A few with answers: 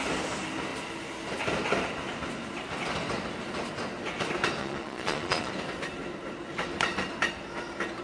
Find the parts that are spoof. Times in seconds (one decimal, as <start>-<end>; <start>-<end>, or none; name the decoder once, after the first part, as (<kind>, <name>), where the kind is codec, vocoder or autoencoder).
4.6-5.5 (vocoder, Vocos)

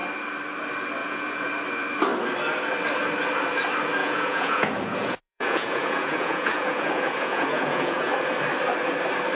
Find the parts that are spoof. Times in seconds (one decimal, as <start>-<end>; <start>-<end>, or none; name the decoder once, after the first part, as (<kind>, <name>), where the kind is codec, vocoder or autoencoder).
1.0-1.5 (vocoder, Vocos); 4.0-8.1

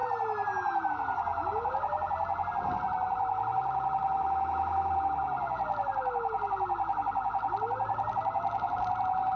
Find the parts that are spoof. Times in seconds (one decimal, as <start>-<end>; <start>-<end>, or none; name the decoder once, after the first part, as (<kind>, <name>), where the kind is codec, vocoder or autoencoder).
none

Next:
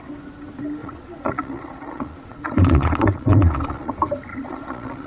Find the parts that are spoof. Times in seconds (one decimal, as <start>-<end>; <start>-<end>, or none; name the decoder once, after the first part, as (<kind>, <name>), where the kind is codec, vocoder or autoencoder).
0.8-3.9 (vocoder, Vocos); 4.3-5.1

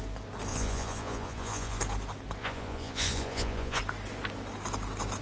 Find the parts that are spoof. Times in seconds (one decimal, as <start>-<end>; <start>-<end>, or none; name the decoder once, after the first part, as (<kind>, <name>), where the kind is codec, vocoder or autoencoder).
0.5-1.8 (vocoder, Vocos); 2.4-3.8

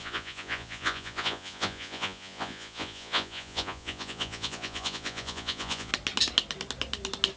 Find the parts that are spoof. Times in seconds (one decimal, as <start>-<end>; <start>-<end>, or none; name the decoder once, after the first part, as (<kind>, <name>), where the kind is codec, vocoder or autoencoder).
0.0-5.9 (vocoder, Vocos)